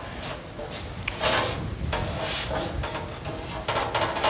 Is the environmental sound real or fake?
real